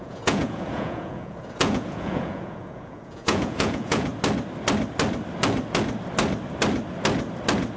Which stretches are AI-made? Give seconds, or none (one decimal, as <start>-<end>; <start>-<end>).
0.0-4.1